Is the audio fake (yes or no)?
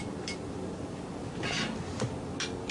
no